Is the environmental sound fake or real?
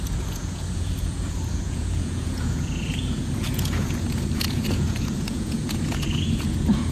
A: fake